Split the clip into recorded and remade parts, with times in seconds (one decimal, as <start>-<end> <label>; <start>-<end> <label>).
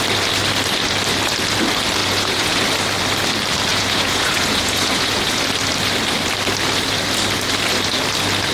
0.0-2.0 recorded; 2.0-2.6 remade; 2.6-3.7 recorded; 3.7-5.4 remade; 5.4-8.5 recorded